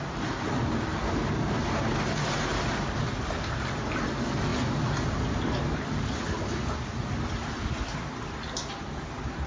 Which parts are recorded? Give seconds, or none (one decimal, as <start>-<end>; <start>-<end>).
0.0-9.5